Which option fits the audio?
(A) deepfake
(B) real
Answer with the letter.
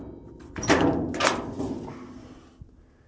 B